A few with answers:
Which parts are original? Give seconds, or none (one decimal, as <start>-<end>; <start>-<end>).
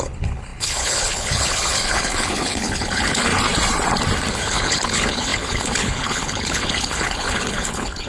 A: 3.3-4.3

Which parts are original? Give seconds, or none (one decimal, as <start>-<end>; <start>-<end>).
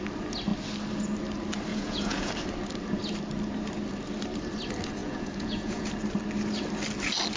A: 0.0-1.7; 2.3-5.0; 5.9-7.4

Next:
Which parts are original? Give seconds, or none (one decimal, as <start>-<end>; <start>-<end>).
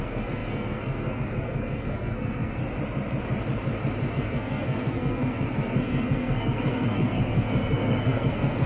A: 2.6-4.1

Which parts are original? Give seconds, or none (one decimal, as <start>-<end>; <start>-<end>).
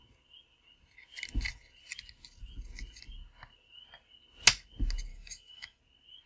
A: 0.0-5.1; 5.8-6.3